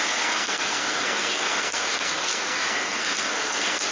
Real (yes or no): no